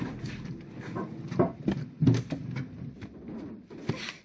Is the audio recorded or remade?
recorded